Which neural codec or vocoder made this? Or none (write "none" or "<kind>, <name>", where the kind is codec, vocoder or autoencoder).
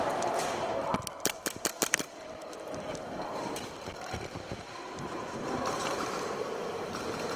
vocoder, BigVGAN v2